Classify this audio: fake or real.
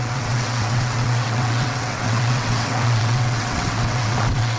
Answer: fake